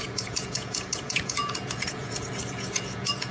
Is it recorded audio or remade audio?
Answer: remade